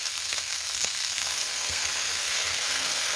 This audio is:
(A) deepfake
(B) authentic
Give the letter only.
A